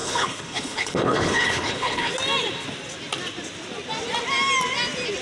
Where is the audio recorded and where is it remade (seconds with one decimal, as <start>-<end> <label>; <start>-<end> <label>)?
0.0-2.1 remade; 2.1-5.2 recorded